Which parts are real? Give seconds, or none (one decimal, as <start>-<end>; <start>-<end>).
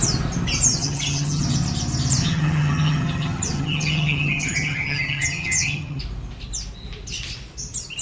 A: 0.0-0.7; 1.4-2.2; 6.0-8.0